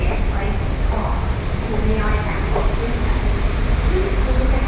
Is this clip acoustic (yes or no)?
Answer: yes